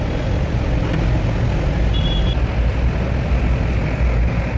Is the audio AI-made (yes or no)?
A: no